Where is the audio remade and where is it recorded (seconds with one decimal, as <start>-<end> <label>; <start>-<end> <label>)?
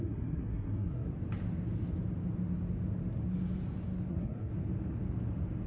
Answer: 0.0-1.1 remade; 1.1-4.1 recorded; 4.1-4.5 remade; 4.5-5.7 recorded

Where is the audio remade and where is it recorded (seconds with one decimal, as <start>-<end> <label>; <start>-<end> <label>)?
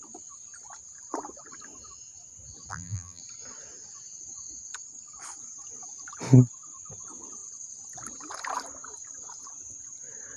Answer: 0.0-2.7 recorded; 2.7-3.2 remade; 3.2-10.4 recorded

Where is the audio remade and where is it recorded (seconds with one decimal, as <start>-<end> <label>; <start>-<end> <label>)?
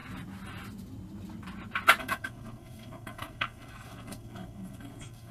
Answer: 0.0-2.0 recorded; 2.0-5.3 remade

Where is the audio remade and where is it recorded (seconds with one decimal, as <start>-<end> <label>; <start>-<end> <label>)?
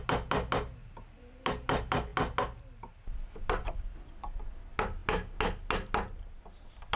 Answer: 0.0-7.0 recorded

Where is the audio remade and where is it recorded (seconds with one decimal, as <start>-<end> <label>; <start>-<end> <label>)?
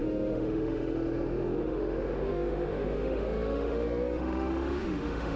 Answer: 0.0-5.4 remade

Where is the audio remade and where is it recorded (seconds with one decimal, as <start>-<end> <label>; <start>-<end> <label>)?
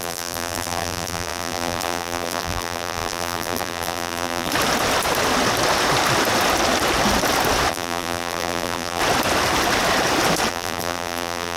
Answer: 0.0-4.5 remade; 4.5-7.7 recorded; 7.7-9.0 remade; 9.0-10.5 recorded; 10.5-11.6 remade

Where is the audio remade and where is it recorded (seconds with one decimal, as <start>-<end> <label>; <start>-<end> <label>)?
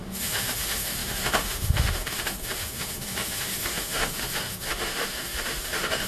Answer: 0.0-6.1 remade